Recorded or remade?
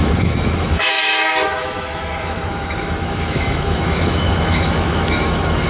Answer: remade